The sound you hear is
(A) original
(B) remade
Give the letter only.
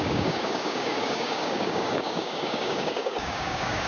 B